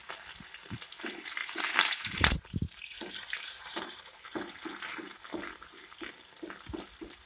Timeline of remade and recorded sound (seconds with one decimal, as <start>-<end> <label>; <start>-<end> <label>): 0.0-1.4 recorded; 1.4-4.0 remade; 4.0-7.3 recorded